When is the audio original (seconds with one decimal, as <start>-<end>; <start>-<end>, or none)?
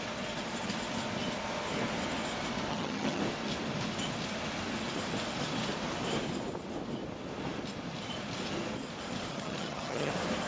0.0-2.7; 3.2-9.3; 10.1-10.5